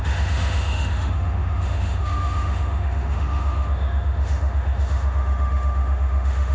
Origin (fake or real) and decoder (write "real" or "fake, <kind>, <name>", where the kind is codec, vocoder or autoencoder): fake, autoencoder, DAC-VAE